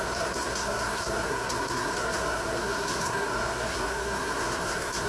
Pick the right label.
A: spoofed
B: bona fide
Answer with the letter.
A